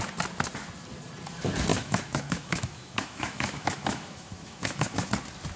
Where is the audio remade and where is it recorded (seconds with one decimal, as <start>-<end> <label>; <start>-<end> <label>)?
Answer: 0.0-1.7 recorded; 1.7-5.1 remade; 5.1-5.6 recorded